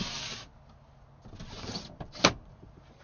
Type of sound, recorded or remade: recorded